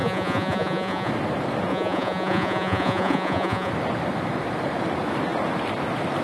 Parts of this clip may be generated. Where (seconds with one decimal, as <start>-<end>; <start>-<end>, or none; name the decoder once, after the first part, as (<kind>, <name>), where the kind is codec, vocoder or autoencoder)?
0.0-1.1 (vocoder, Vocos); 1.7-3.7